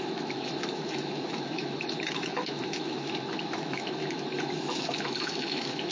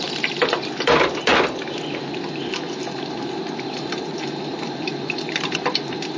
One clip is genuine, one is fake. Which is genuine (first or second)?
second